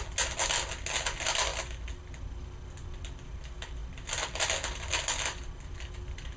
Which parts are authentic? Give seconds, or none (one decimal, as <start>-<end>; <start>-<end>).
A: 0.0-6.4

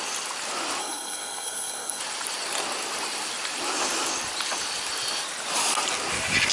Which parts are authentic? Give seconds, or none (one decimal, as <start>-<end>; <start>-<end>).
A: 0.0-0.8; 2.0-6.5

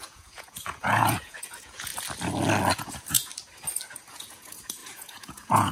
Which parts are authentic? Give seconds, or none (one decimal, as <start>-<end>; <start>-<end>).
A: 1.9-2.8; 3.3-4.1

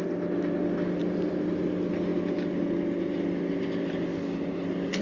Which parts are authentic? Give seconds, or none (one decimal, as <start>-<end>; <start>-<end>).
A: 0.0-5.0

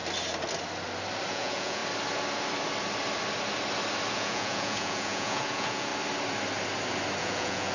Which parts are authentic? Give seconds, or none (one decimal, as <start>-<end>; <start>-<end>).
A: 0.0-1.3; 1.8-4.1; 5.9-7.2

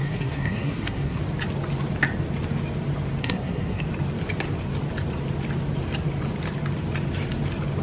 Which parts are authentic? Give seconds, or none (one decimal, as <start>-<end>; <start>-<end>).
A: 1.2-3.2; 3.8-7.8

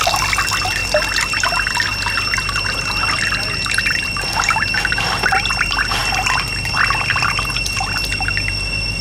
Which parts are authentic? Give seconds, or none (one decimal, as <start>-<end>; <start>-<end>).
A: 0.0-9.0